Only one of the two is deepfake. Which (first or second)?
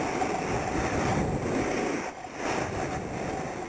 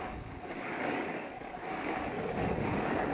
second